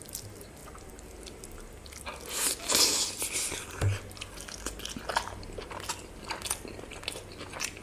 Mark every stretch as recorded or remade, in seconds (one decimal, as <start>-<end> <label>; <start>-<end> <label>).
0.0-7.8 recorded